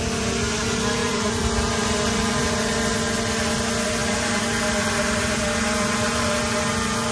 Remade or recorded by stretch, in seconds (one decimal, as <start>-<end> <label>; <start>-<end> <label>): 0.0-1.0 recorded; 1.0-2.4 remade; 2.4-4.0 recorded; 4.0-6.4 remade; 6.4-7.1 recorded